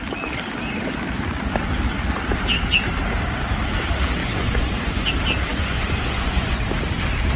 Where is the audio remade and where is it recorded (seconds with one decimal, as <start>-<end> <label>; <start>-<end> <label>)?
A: 0.0-4.2 recorded; 4.2-5.1 remade; 5.1-5.5 recorded; 5.5-6.6 remade; 6.6-7.4 recorded